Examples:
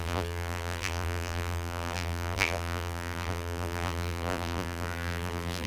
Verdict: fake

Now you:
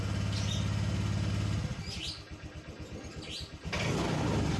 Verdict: real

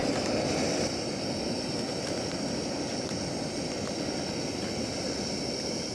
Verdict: real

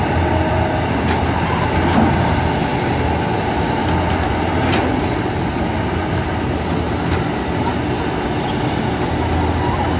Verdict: real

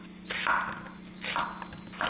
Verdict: real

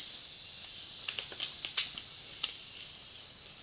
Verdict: real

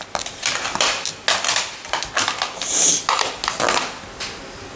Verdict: real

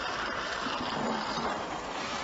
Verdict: fake